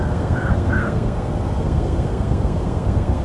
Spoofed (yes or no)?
yes